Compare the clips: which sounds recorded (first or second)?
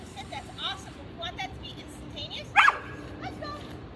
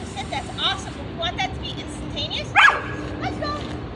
second